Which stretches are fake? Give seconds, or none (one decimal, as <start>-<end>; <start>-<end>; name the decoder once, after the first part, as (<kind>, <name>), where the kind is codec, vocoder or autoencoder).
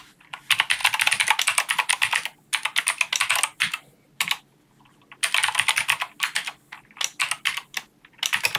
none